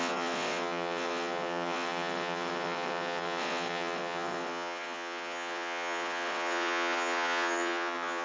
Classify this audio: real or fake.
fake